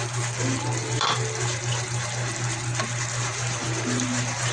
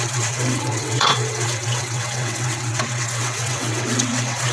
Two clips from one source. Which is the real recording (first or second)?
first